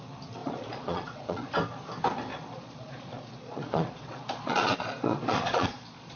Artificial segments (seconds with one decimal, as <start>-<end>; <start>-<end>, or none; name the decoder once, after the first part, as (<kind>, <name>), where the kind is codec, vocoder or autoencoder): 0.4-1.5 (vocoder, Vocos); 2.3-6.2